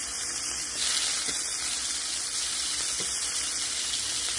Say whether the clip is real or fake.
real